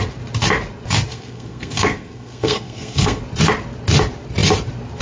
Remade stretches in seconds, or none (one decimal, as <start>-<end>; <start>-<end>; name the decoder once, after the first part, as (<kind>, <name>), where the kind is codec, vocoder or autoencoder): 1.1-3.2 (codec, SNAC)

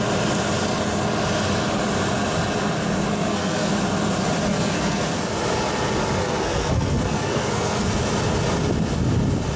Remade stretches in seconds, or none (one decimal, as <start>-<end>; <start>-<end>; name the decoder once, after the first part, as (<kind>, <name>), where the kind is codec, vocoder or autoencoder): 3.1-3.7 (codec, SNAC); 4.5-5.0; 6.2-7.9

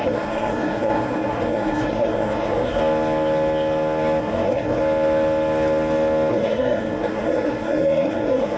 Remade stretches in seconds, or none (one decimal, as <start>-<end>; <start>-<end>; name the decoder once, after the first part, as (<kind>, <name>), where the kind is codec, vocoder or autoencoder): 0.0-2.8 (codec, SNAC); 4.2-4.8; 6.3-8.6

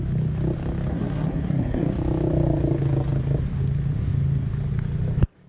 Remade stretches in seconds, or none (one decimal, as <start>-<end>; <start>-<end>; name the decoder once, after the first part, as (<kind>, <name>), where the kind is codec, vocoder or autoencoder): 0.9-1.9 (codec, SNAC)

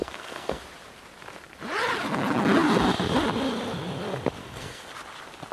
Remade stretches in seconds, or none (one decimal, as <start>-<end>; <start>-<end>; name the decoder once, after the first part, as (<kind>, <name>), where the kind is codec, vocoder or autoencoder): 0.0-0.6 (codec, SNAC); 4.4-4.9